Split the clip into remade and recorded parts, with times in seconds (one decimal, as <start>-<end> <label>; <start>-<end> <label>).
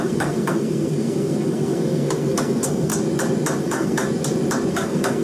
0.0-2.9 remade; 2.9-3.6 recorded; 3.6-4.0 remade; 4.0-4.7 recorded; 4.7-5.2 remade